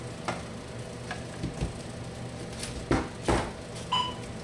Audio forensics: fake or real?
real